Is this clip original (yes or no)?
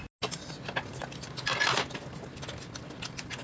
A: yes